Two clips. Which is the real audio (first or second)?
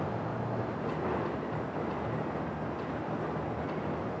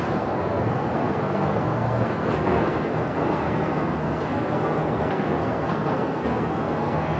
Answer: first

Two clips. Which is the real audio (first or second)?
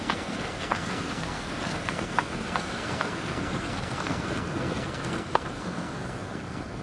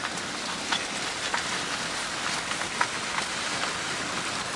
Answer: second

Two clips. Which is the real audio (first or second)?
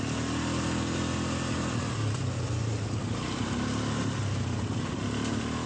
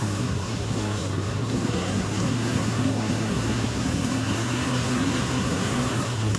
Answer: first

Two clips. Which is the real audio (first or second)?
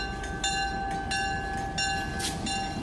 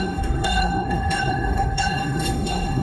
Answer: first